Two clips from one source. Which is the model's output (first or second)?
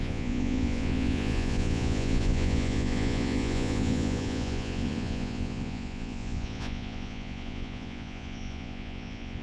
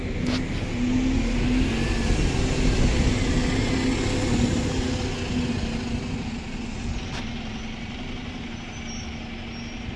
first